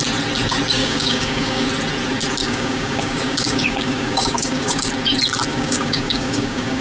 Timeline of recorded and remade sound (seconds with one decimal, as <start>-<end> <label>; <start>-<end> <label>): 0.0-0.8 recorded; 0.8-1.7 remade; 1.7-2.4 recorded; 2.4-4.9 remade; 4.9-5.5 recorded; 5.5-6.8 remade